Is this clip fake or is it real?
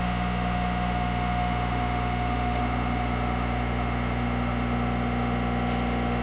fake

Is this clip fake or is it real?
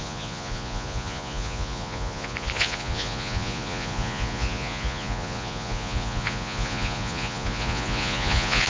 fake